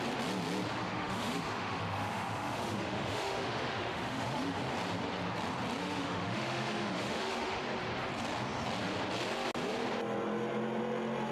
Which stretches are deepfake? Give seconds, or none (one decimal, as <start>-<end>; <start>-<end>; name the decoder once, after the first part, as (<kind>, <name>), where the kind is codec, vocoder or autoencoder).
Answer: 0.8-4.6 (autoencoder, DAC-VAE); 5.8-7.6